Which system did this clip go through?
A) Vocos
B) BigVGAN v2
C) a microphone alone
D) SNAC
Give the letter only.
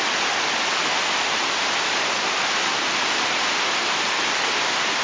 C